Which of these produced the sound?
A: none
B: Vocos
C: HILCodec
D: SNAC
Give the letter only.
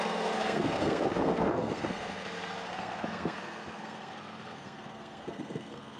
D